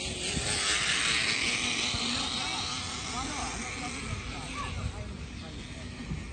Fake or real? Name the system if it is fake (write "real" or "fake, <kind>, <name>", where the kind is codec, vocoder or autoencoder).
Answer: real